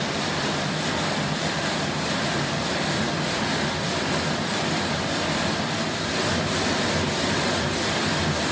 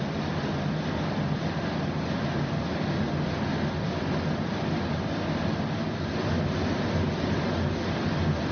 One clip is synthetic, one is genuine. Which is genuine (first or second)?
second